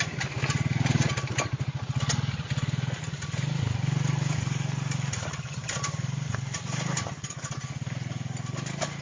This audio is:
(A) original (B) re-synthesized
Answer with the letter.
A